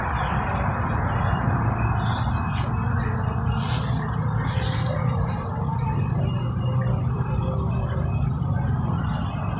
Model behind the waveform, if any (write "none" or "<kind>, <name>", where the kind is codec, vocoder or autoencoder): none